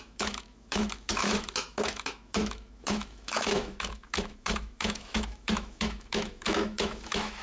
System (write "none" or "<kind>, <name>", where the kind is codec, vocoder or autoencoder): autoencoder, DAC-VAE